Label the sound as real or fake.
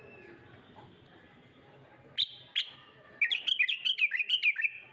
real